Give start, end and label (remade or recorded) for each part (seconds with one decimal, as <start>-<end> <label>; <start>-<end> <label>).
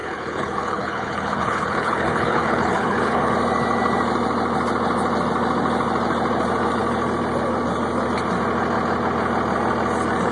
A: 0.0-3.3 remade; 3.3-10.3 recorded